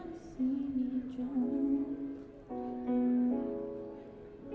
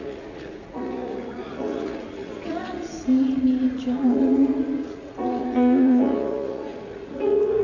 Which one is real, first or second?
first